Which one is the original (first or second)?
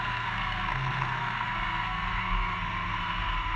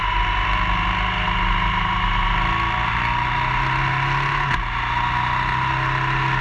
second